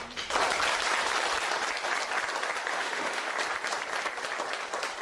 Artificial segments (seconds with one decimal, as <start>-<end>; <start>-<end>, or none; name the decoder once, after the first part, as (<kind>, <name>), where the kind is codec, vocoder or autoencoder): 2.7-3.3 (autoencoder, DAC-VAE)